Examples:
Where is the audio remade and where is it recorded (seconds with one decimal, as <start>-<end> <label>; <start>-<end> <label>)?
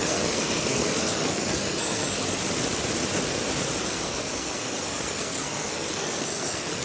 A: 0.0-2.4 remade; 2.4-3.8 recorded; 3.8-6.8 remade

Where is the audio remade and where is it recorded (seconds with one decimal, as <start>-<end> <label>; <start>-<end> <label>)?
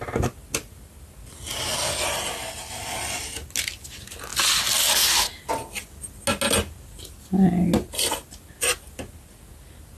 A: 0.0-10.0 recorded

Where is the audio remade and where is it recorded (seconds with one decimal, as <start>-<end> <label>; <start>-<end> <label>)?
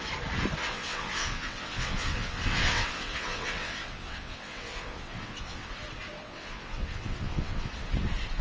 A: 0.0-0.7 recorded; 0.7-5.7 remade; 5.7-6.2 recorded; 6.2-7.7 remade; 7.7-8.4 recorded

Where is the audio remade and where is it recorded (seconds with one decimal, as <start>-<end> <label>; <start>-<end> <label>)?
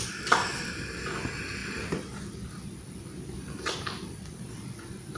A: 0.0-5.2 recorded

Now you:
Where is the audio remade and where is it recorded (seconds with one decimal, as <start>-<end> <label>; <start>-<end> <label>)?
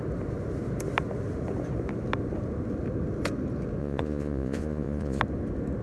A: 0.0-3.8 recorded; 3.8-5.2 remade; 5.2-5.8 recorded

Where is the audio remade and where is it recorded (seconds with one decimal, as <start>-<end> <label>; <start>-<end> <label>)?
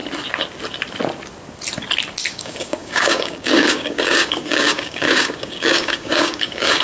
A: 0.0-2.3 recorded; 2.3-6.8 remade